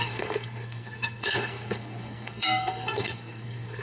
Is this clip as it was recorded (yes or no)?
no